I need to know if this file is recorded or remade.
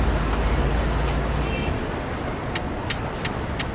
recorded